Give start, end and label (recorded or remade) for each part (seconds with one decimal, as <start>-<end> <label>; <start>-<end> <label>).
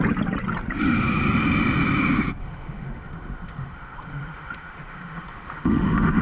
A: 0.0-2.4 recorded; 2.4-6.2 remade